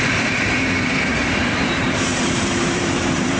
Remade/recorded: remade